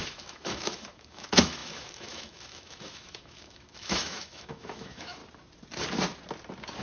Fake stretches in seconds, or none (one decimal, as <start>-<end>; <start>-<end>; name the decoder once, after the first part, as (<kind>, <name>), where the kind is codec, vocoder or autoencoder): 0.0-5.2 (autoencoder, DAC-VAE)